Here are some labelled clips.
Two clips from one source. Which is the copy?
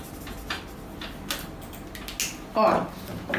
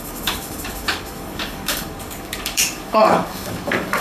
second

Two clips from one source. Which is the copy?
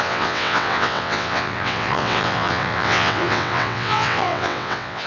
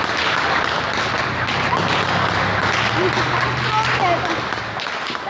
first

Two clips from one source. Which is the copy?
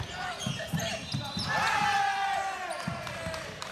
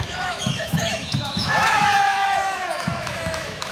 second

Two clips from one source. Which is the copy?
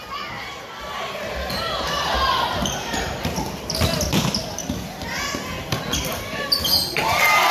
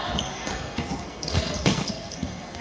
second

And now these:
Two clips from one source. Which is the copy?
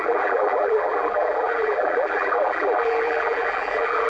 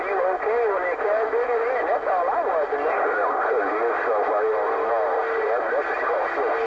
first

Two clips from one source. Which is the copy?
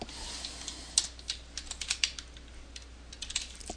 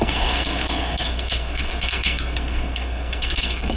second